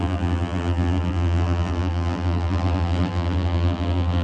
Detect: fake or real fake